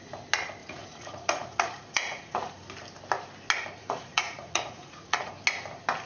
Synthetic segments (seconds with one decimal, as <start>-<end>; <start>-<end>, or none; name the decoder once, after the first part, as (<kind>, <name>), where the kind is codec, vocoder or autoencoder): 0.6-2.7 (vocoder, Vocos); 3.8-5.3